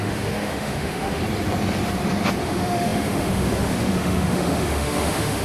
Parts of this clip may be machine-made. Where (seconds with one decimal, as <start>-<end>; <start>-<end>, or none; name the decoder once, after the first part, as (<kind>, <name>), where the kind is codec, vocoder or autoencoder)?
0.0-1.2 (autoencoder, DAC-VAE); 2.4-5.4